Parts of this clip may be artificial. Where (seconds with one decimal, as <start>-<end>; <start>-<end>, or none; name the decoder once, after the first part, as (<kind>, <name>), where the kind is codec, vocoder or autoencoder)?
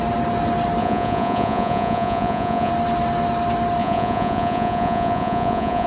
0.8-2.7 (vocoder, Vocos); 3.8-5.9